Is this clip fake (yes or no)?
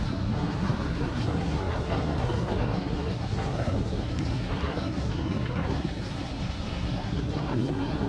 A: yes